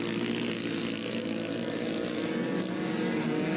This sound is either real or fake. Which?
real